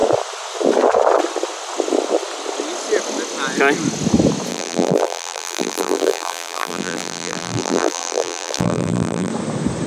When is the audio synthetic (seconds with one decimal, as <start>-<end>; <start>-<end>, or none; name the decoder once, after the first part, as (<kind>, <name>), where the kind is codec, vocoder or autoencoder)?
4.5-9.3 (vocoder, BigVGAN v2)